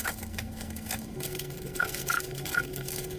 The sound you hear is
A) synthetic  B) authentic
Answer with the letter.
A